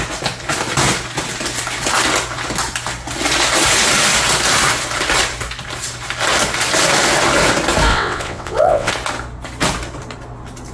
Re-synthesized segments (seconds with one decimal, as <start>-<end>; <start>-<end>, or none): 7.9-8.9